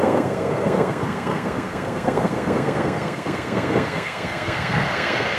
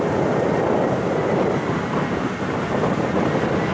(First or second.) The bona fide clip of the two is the second